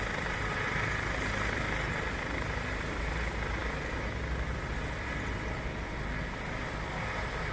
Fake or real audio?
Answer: real